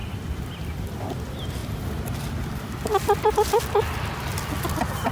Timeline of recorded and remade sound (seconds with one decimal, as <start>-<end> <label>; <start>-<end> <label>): 0.0-0.5 remade; 0.5-1.6 recorded; 1.6-3.3 remade; 3.3-5.1 recorded

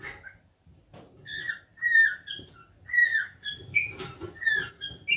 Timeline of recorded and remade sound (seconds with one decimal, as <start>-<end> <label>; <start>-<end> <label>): 0.0-1.7 recorded; 1.7-2.5 remade; 2.5-5.2 recorded

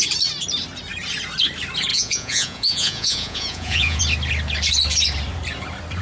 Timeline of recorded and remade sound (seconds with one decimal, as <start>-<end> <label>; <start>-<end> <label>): 0.0-1.9 recorded; 1.9-4.0 remade; 4.0-6.0 recorded

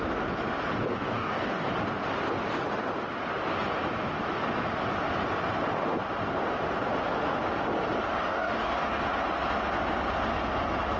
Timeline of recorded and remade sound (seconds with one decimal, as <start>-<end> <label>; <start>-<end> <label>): 0.0-0.9 recorded; 0.9-1.7 remade; 1.7-8.2 recorded; 8.2-9.0 remade; 9.0-11.0 recorded

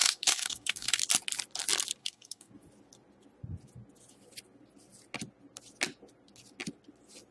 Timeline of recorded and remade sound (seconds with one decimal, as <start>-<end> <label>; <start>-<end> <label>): 0.0-1.0 remade; 1.0-2.0 recorded; 2.0-2.5 remade; 2.5-7.3 recorded

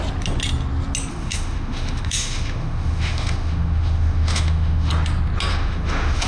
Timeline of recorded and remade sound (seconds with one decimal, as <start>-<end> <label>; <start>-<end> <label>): 0.0-1.1 recorded; 1.1-4.9 remade; 4.9-5.5 recorded; 5.5-6.3 remade